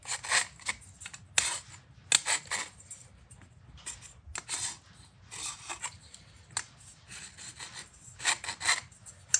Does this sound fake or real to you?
real